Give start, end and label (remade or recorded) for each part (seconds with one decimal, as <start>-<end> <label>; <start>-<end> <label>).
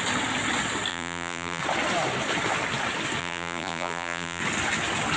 0.0-0.9 recorded; 0.9-1.6 remade; 1.6-3.2 recorded; 3.2-4.4 remade; 4.4-5.2 recorded